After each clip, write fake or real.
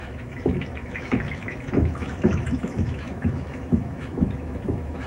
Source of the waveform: fake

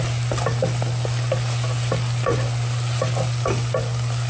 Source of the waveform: real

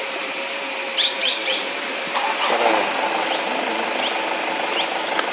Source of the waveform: real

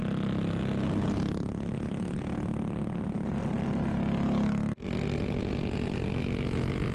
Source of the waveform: real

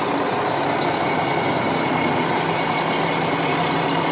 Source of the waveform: real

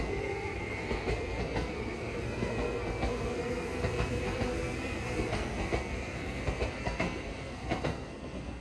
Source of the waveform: fake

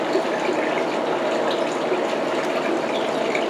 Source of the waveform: real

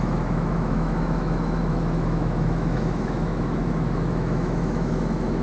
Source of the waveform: fake